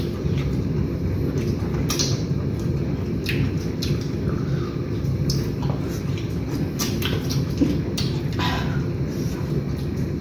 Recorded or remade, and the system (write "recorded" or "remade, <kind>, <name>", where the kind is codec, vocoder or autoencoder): recorded